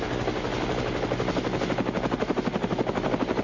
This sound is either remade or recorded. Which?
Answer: recorded